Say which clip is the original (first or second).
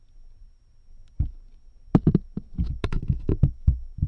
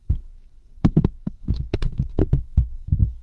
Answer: first